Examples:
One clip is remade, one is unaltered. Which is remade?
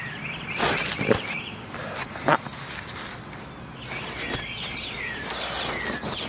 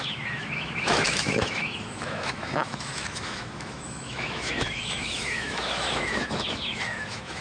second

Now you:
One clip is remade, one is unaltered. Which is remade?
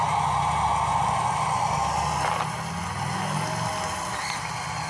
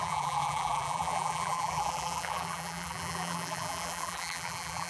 second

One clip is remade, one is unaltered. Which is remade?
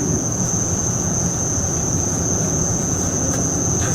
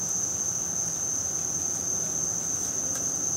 first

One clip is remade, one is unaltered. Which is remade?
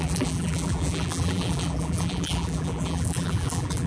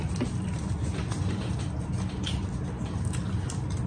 first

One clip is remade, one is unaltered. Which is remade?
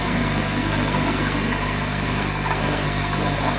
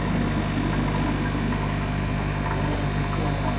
first